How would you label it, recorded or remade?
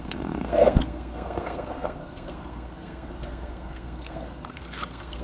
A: remade